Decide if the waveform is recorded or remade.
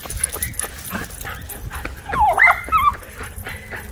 recorded